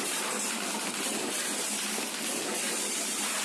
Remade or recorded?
remade